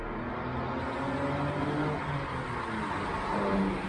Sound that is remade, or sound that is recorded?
recorded